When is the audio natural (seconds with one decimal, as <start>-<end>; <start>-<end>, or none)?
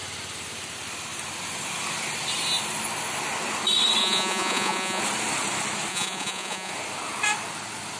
0.0-4.0; 5.0-5.9; 6.7-8.0